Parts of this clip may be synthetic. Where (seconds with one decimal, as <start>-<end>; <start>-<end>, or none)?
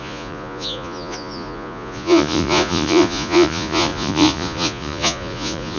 0.0-5.8